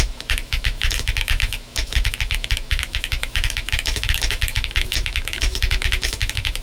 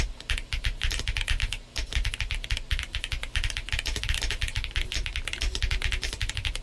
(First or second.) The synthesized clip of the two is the first